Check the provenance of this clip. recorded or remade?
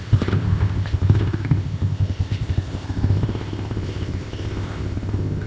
remade